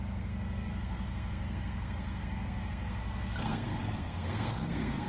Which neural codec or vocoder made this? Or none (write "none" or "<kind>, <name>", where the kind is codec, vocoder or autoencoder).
codec, SNAC